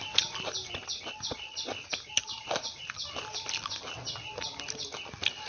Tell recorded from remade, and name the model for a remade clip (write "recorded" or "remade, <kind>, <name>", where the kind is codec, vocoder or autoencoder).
recorded